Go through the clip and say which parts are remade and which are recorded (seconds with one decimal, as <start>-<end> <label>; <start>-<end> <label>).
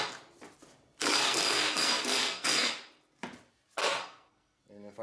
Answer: 0.0-1.0 recorded; 1.0-2.7 remade; 2.7-3.8 recorded; 3.8-4.6 remade; 4.6-5.0 recorded